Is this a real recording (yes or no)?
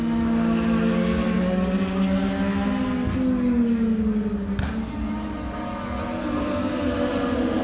yes